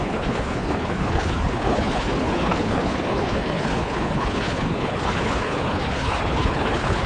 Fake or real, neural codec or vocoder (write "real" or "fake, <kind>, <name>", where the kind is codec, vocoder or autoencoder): fake, codec, HILCodec